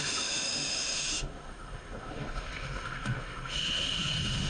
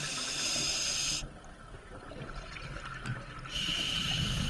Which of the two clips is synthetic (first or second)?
first